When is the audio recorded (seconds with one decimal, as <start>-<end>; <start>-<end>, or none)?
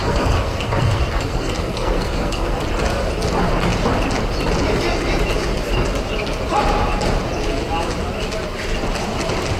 2.6-9.6